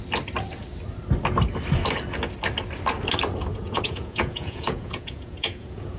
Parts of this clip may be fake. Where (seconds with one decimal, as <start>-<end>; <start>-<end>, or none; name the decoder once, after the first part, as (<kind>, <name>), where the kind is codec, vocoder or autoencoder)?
3.5-6.0 (vocoder, Vocos)